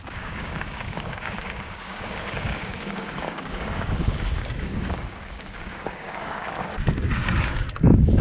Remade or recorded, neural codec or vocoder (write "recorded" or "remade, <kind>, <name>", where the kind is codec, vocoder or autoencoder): remade, codec, DAC